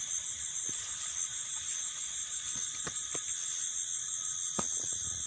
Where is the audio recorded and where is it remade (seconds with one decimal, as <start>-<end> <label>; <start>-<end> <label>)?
0.0-5.3 recorded